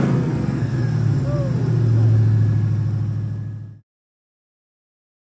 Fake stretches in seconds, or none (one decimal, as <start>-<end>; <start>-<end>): 0.0-0.7; 3.9-5.3